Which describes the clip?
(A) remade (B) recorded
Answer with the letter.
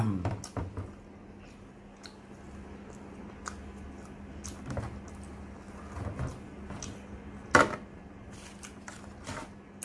B